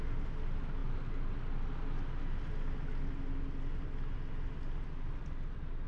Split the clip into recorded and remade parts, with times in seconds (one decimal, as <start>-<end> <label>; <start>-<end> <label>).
0.0-5.9 recorded